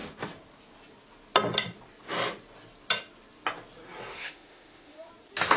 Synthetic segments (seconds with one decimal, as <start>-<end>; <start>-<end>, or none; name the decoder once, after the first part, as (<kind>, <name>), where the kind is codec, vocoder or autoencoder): 4.1-5.1 (autoencoder, DAC-VAE)